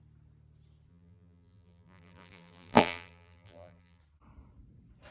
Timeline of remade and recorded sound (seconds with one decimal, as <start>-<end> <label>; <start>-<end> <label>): 0.0-0.9 recorded; 0.9-4.0 remade; 4.0-5.1 recorded

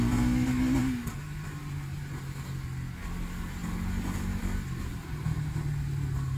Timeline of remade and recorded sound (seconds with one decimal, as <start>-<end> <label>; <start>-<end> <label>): 0.0-6.4 recorded

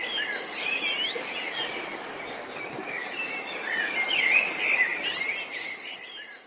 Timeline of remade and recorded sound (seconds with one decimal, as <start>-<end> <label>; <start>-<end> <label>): 0.0-3.0 recorded; 3.0-3.5 remade; 3.5-4.9 recorded; 4.9-6.1 remade; 6.1-6.5 recorded

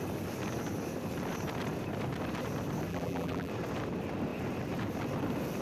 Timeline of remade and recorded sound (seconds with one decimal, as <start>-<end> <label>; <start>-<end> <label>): 0.0-2.9 recorded; 2.9-3.5 remade; 3.5-5.6 recorded

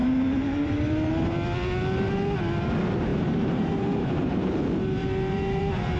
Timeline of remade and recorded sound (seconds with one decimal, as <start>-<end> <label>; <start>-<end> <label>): 0.0-1.1 remade; 1.1-3.1 recorded; 3.1-4.6 remade; 4.6-5.0 recorded; 5.0-5.6 remade; 5.6-6.0 recorded

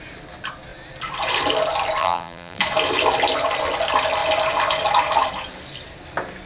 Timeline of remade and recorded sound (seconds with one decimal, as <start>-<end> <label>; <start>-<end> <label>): 0.0-2.0 recorded; 2.0-2.6 remade; 2.6-6.5 recorded